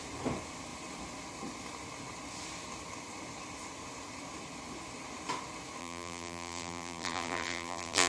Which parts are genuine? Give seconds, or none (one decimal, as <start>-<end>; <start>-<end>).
0.0-5.8